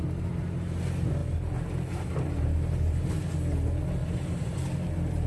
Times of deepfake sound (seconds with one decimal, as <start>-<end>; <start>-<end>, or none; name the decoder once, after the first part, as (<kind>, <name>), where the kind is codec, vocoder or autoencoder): 4.0-5.3 (vocoder, BigVGAN v2)